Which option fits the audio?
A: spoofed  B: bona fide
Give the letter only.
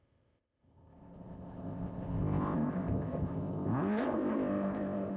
A